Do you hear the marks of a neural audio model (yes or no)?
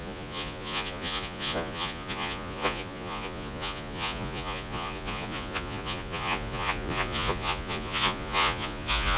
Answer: yes